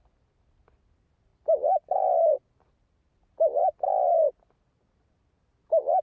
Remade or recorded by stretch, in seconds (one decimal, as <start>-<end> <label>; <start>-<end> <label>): 0.0-1.3 recorded; 1.3-3.2 remade; 3.2-6.0 recorded